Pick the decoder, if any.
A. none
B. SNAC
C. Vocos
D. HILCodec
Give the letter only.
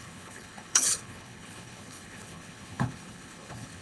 D